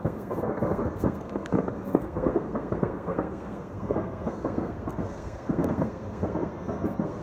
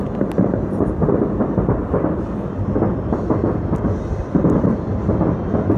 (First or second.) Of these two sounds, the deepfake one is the first